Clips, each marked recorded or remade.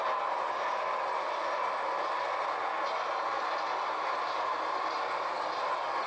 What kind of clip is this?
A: recorded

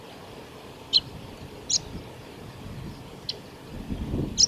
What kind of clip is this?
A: recorded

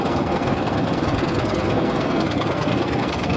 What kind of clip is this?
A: remade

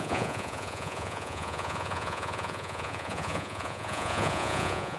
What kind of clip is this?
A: remade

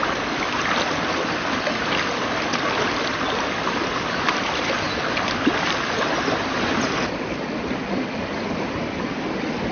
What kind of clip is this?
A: remade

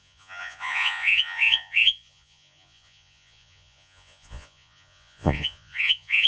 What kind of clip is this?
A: remade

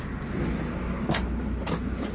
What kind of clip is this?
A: recorded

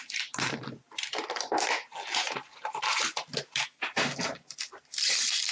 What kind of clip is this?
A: recorded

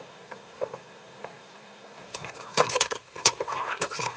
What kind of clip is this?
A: remade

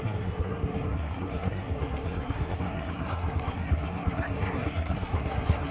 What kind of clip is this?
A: remade